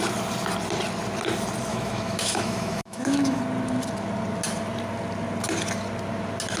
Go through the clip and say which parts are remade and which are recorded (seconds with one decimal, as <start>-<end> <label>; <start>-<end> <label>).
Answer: 0.0-1.7 recorded; 1.7-3.4 remade; 3.4-6.6 recorded